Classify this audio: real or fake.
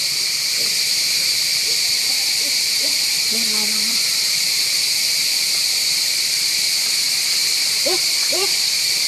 fake